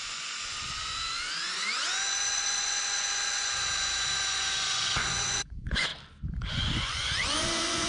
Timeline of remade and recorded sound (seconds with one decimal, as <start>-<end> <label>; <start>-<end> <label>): 0.0-5.9 remade; 5.9-6.5 recorded; 6.5-7.9 remade